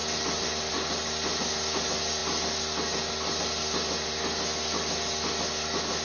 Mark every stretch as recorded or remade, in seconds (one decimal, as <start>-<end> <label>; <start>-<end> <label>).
0.0-6.0 recorded